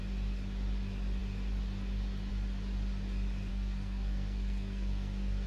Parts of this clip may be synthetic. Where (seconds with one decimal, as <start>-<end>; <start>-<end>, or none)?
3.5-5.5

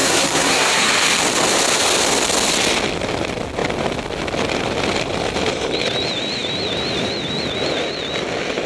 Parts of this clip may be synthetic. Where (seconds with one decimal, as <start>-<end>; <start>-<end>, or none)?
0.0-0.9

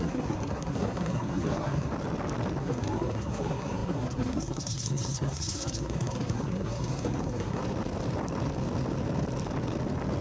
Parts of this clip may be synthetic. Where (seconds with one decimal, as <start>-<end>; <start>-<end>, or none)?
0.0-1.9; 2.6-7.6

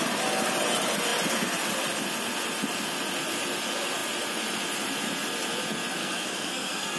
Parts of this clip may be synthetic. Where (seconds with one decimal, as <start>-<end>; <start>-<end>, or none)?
6.0-7.0